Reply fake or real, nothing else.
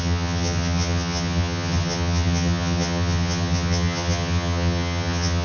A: fake